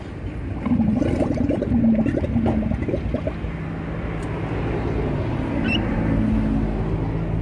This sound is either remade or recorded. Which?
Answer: recorded